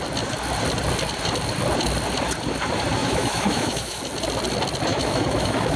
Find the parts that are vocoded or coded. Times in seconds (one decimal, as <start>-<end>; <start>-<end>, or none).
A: 3.0-4.0; 4.9-5.8